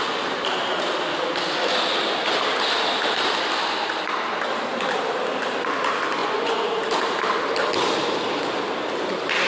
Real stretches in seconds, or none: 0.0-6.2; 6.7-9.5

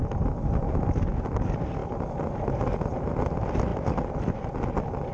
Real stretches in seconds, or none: 0.0-5.1